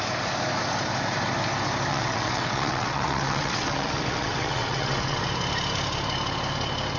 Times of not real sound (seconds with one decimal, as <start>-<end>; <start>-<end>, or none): 1.9-5.2